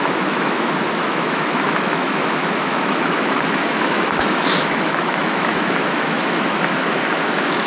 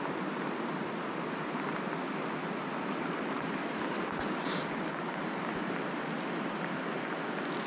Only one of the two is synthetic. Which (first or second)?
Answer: first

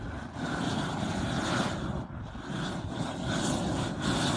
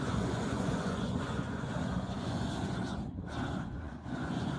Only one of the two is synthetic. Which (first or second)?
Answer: second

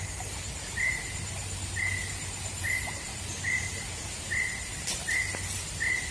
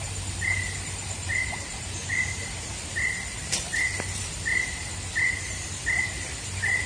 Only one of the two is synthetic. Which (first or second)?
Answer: second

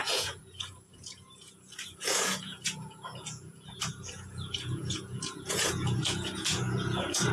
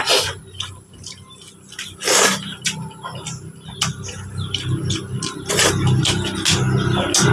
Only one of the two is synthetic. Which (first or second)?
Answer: first